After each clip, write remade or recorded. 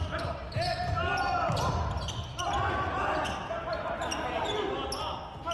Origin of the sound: recorded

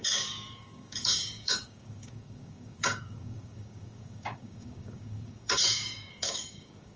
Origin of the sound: remade